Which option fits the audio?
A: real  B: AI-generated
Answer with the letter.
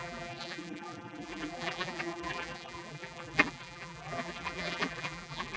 B